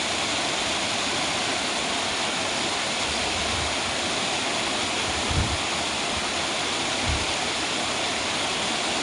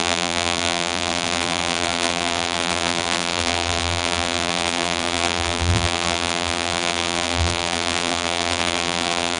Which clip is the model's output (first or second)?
second